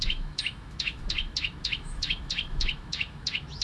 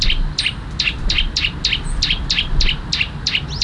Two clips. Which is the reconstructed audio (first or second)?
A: first